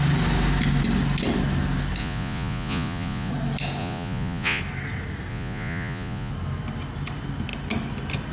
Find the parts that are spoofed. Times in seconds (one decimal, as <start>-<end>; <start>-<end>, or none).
2.0-3.3; 3.8-4.6; 5.3-6.3